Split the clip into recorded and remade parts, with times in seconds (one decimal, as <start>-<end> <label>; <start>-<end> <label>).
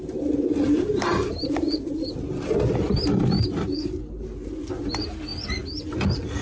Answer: 0.0-3.0 remade; 3.0-4.8 recorded; 4.8-5.3 remade; 5.3-6.0 recorded; 6.0-6.4 remade